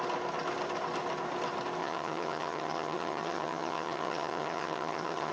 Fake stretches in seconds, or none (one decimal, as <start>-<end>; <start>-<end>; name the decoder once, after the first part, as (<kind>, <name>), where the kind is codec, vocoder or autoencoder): 1.8-5.3 (vocoder, HiFi-GAN)